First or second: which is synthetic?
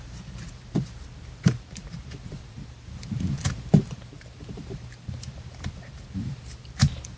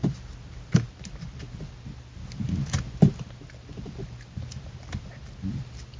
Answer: first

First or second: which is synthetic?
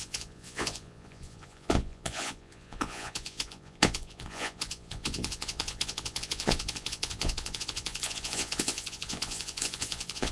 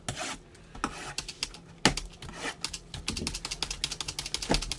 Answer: first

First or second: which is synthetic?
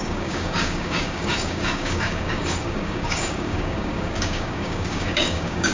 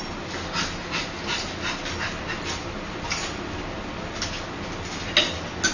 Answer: first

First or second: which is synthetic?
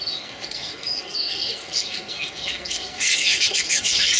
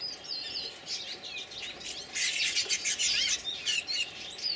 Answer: first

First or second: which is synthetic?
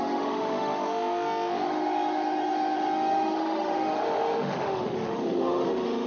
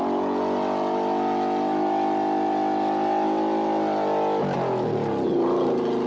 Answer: first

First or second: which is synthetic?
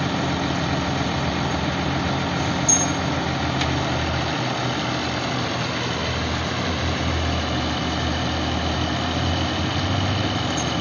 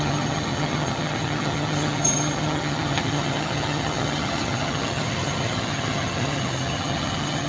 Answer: second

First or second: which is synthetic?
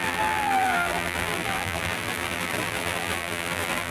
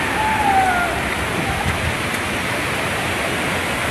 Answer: first